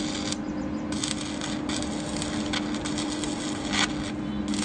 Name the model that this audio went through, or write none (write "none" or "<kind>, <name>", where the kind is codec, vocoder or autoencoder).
none